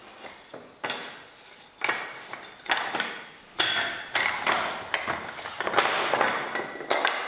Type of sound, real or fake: real